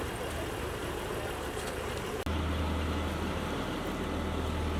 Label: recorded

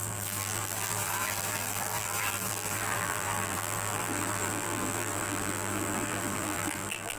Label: remade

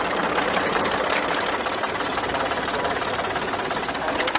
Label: recorded